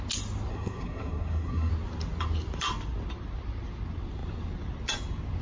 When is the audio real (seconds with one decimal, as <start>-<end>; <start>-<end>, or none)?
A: 0.0-0.5; 1.7-5.4